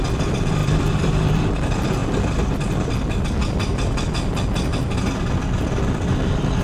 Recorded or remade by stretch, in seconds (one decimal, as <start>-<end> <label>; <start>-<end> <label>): 0.0-0.6 recorded; 0.6-1.4 remade; 1.4-3.4 recorded; 3.4-6.6 remade